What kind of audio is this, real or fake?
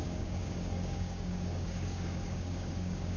fake